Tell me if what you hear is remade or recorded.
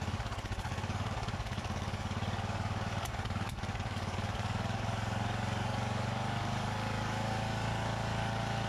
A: remade